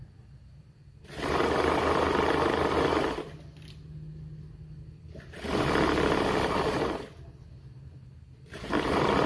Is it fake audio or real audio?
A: real